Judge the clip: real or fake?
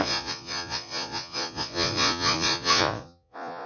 fake